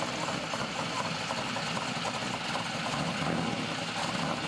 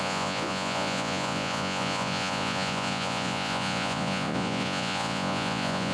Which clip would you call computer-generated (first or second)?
second